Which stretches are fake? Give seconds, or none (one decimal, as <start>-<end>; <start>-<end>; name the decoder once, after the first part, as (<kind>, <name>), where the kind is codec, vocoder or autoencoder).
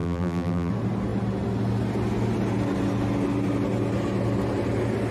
0.0-0.7 (vocoder, BigVGAN v2)